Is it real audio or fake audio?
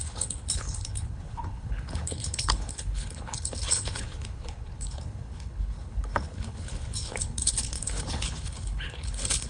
fake